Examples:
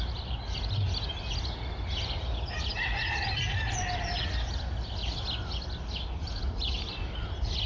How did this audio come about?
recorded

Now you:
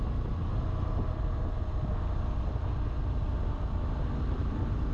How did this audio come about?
recorded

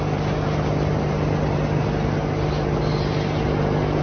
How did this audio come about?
recorded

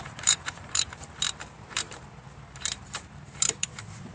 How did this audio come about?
remade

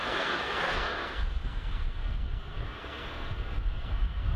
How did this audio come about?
remade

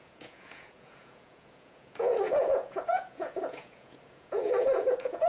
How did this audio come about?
remade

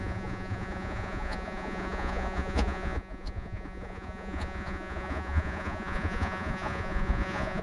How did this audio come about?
remade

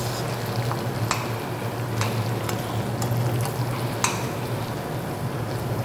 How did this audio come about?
recorded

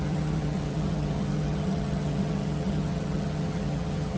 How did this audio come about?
remade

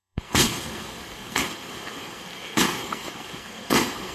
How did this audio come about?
remade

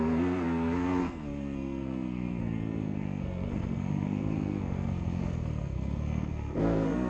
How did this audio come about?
remade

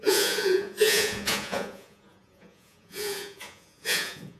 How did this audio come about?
remade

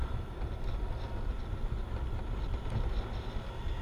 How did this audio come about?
recorded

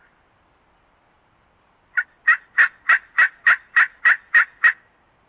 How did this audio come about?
recorded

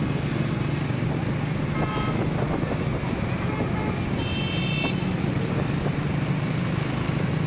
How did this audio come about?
recorded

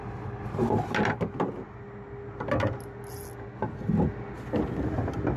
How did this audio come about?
recorded